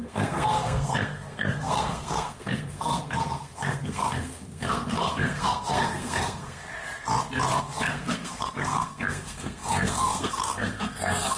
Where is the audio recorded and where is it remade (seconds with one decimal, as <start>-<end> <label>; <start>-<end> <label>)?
0.0-6.7 remade; 6.7-7.6 recorded; 7.6-11.4 remade